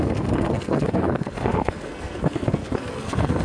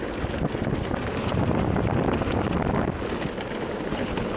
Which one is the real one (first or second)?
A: second